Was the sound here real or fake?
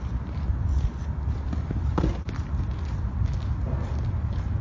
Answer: real